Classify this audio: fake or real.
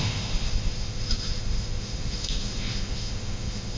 fake